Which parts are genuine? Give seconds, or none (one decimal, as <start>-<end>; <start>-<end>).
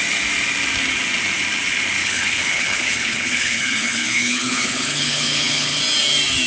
0.0-2.0; 5.8-6.5